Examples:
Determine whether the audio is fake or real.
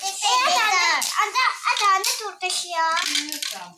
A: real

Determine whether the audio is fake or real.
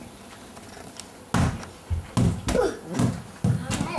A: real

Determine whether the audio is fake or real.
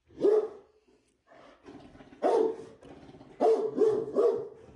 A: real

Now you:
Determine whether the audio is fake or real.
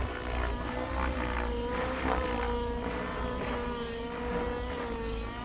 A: real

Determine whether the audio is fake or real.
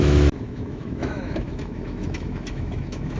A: fake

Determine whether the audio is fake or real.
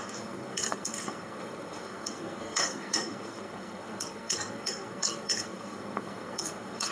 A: fake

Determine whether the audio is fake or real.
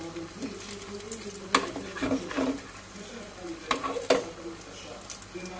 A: real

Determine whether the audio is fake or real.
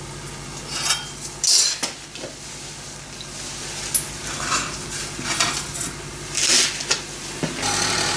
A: real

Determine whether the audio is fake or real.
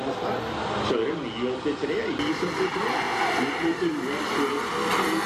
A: real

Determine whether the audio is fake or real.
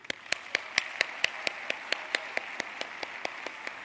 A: real